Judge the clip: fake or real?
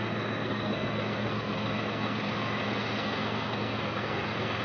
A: fake